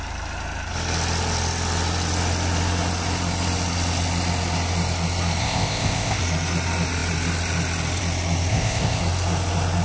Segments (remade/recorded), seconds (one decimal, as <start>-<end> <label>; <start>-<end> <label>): 0.0-5.4 recorded; 5.4-6.2 remade; 6.2-8.5 recorded; 8.5-9.0 remade; 9.0-9.8 recorded